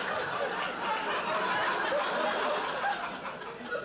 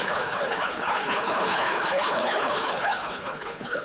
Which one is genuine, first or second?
first